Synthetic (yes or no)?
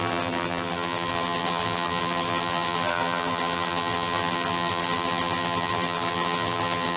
yes